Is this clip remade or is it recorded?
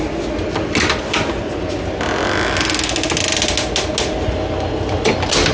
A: recorded